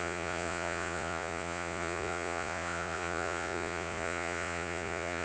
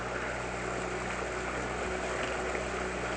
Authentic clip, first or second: second